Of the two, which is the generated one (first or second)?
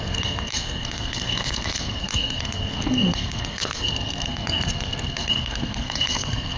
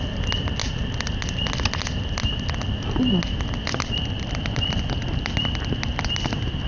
first